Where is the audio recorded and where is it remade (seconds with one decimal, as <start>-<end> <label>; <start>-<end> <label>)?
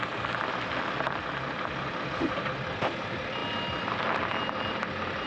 0.0-5.3 recorded